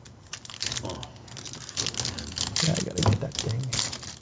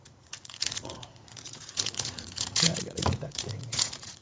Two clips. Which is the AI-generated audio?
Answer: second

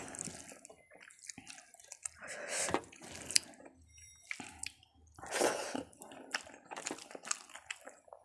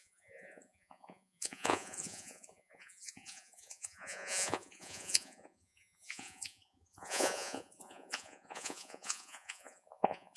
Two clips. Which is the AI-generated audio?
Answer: second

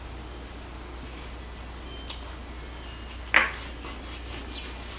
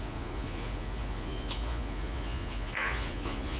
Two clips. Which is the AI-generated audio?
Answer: second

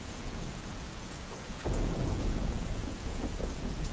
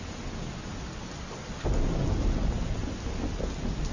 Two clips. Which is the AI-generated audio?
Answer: first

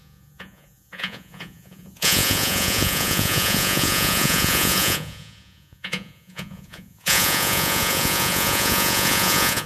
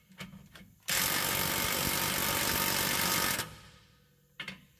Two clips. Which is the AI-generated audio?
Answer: first